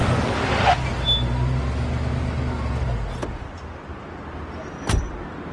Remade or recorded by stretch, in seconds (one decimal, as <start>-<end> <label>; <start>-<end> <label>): 0.0-5.5 recorded